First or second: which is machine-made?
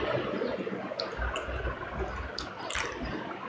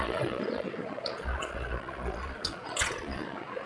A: second